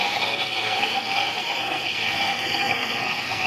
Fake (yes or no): yes